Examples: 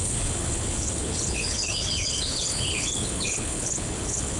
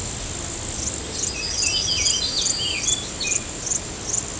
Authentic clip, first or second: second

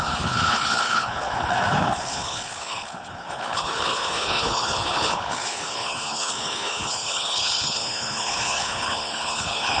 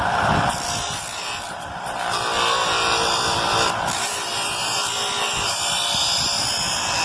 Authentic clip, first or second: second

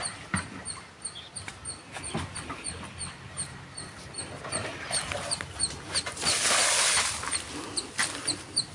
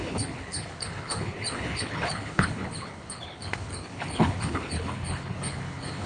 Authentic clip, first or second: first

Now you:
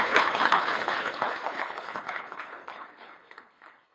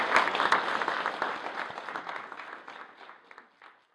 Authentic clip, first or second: second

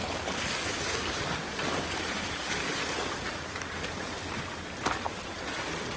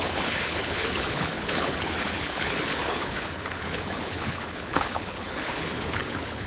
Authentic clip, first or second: first